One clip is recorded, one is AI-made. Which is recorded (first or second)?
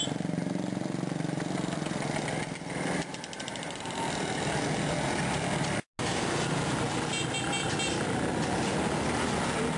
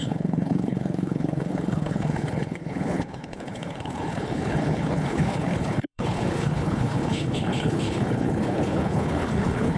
first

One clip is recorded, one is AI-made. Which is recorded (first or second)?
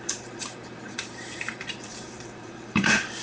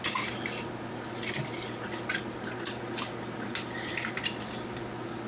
second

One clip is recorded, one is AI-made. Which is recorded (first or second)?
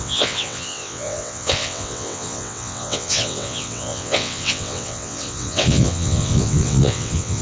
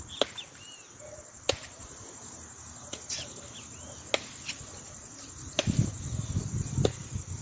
second